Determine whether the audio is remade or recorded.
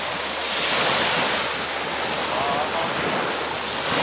recorded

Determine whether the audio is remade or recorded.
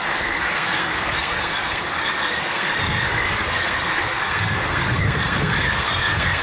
remade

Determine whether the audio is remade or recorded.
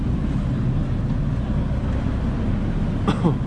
recorded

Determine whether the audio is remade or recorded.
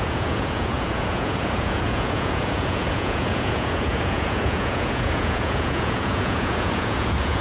remade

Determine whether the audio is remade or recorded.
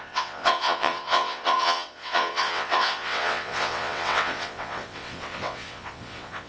remade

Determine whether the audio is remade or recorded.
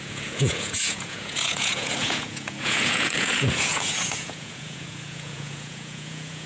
remade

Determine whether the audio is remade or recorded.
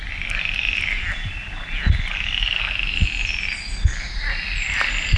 recorded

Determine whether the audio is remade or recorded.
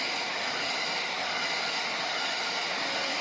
recorded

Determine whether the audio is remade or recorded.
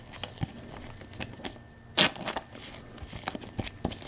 recorded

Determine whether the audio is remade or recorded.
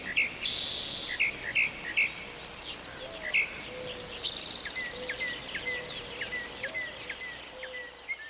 recorded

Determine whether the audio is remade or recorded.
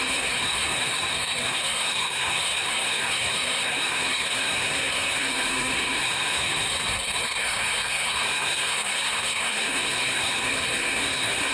remade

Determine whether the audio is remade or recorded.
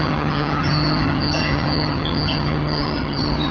remade